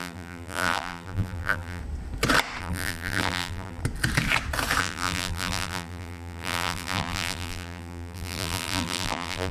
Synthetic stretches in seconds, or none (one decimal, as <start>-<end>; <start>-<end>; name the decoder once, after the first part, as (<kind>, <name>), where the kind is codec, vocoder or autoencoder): 0.0-1.8 (vocoder, BigVGAN v2); 2.6-3.8; 4.8-9.5